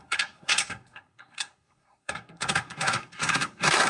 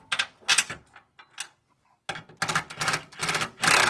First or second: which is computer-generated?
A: first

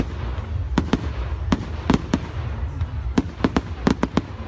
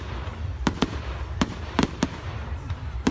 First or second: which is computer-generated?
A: second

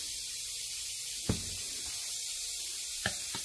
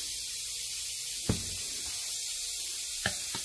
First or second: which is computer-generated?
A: first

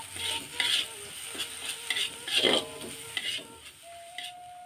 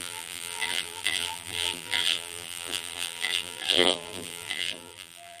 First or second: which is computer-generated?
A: second